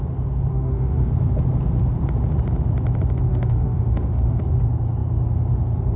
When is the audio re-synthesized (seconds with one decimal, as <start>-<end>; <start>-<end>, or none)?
0.5-1.1; 3.3-4.4